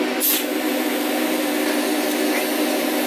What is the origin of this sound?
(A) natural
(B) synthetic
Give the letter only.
A